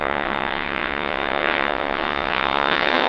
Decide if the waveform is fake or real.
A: fake